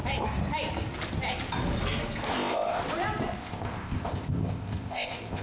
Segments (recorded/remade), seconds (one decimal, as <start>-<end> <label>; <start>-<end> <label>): 0.0-2.3 recorded; 2.3-2.8 remade; 2.8-3.4 recorded; 3.4-5.4 remade